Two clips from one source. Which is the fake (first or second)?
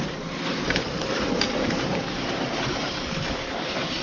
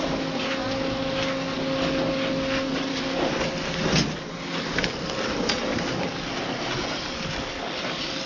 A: first